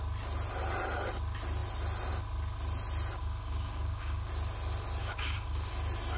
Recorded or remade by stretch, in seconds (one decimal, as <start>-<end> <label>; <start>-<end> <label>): 0.0-3.2 recorded; 3.2-4.3 remade; 4.3-5.0 recorded; 5.0-5.7 remade; 5.7-6.2 recorded